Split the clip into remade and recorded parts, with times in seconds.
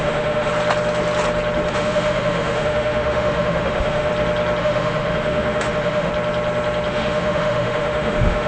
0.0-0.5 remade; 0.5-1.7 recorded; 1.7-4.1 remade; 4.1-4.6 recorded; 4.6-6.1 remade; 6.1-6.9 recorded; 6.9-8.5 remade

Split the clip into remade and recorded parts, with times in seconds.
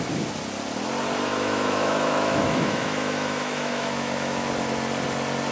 0.0-1.3 recorded; 1.3-4.5 remade; 4.5-5.5 recorded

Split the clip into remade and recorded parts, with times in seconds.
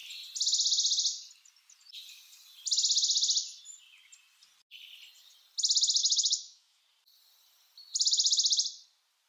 0.0-6.0 recorded; 6.0-6.8 remade; 6.8-9.3 recorded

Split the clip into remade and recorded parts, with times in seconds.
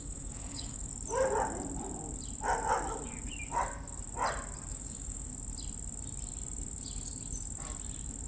0.0-0.9 remade; 0.9-4.7 recorded; 4.7-5.3 remade; 5.3-8.3 recorded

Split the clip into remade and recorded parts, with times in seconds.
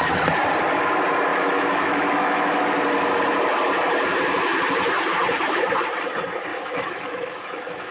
0.0-1.3 recorded; 1.3-2.6 remade; 2.6-6.5 recorded; 6.5-7.9 remade